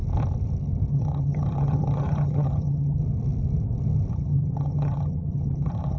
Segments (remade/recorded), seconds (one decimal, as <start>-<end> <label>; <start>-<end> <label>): 0.0-0.9 recorded; 0.9-3.0 remade; 3.0-4.1 recorded; 4.1-6.0 remade